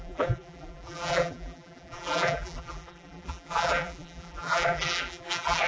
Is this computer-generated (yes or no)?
yes